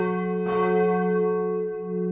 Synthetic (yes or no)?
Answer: no